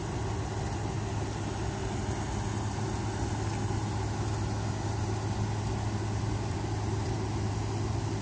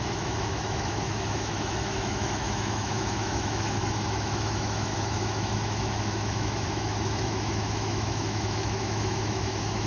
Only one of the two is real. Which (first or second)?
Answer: first